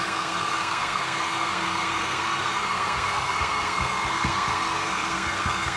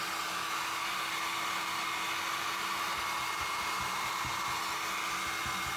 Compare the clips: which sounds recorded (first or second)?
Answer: second